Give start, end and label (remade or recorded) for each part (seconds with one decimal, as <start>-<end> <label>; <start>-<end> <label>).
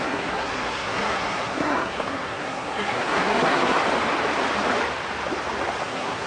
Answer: 0.0-3.8 remade; 3.8-5.8 recorded; 5.8-6.3 remade